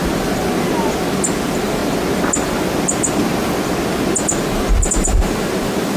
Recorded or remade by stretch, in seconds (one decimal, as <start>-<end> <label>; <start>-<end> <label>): 0.0-1.3 recorded; 1.3-1.8 remade; 1.8-4.8 recorded; 4.8-6.0 remade